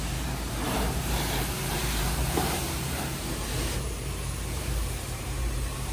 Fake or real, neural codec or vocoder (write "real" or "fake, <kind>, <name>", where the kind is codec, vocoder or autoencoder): fake, vocoder, BigVGAN v2